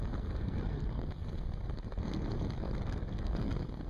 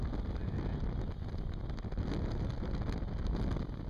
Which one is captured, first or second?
second